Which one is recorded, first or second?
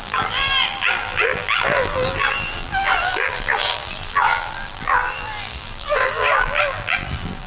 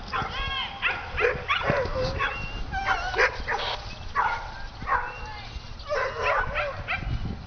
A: second